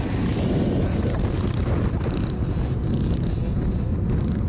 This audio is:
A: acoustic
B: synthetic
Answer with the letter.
A